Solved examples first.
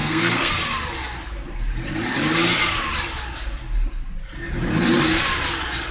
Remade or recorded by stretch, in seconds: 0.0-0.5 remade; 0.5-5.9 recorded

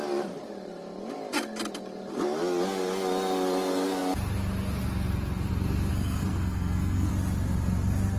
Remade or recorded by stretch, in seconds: 0.0-5.9 recorded; 5.9-7.1 remade; 7.1-8.2 recorded

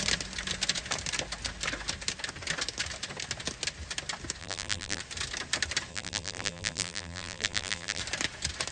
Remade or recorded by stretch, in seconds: 0.0-4.4 recorded; 4.4-5.0 remade; 5.0-5.9 recorded; 5.9-8.0 remade; 8.0-8.7 recorded

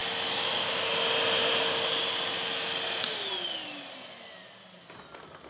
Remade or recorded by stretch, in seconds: 0.0-5.5 recorded